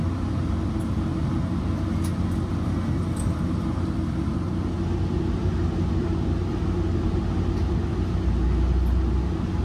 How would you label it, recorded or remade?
recorded